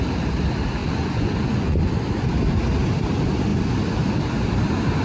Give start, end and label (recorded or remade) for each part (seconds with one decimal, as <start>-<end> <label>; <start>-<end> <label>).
0.0-0.8 recorded; 0.8-1.9 remade; 1.9-5.0 recorded